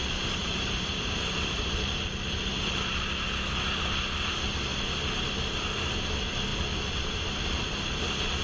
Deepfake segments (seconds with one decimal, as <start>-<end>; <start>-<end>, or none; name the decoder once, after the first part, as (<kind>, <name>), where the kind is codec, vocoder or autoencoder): 0.4-3.1 (vocoder, BigVGAN v2)